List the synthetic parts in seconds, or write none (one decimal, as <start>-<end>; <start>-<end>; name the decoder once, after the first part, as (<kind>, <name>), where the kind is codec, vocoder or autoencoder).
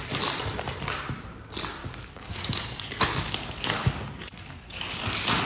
1.8-5.1 (codec, DAC)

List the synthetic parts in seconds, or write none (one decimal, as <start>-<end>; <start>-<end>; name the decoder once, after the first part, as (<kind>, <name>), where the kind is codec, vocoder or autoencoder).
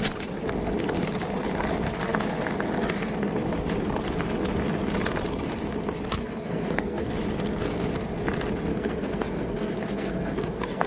6.2-7.1 (codec, SNAC); 8.7-10.9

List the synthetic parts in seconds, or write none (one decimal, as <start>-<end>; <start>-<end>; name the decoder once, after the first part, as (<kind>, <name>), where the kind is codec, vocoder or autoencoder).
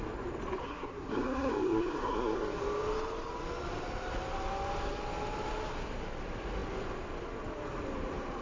0.6-2.6 (codec, SNAC)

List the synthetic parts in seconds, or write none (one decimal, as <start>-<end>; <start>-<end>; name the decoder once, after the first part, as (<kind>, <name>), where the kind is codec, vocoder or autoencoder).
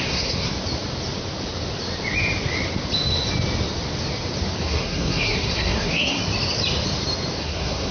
0.0-0.5 (codec, SNAC); 4.6-6.2; 7.4-7.9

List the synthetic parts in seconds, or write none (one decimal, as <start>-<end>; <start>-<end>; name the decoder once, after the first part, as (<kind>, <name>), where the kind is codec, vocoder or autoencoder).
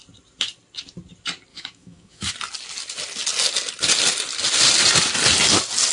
1.5-2.3 (autoencoder, DAC-VAE)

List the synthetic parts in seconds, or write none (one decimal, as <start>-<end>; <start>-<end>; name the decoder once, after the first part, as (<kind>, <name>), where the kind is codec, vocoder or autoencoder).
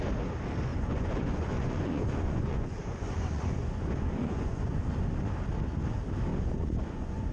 0.7-4.8 (vocoder, Vocos); 6.3-7.3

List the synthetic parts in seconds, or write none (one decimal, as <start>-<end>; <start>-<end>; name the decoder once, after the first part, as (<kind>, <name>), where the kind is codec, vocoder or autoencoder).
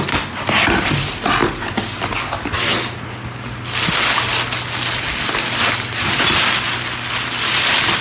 none